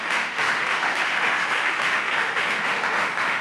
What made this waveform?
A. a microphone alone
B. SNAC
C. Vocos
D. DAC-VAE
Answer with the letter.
D